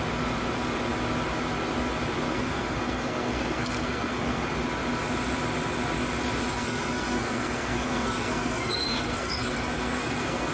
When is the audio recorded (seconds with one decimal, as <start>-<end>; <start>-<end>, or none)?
0.0-2.3; 4.5-6.5